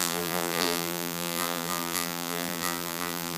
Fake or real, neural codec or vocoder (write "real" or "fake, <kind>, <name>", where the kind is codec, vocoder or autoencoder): fake, vocoder, BigVGAN v2